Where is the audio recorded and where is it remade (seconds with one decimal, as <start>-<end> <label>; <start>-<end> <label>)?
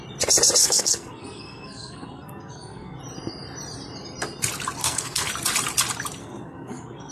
0.0-0.6 recorded; 0.6-3.0 remade; 3.0-4.8 recorded; 4.8-5.3 remade; 5.3-6.2 recorded; 6.2-7.1 remade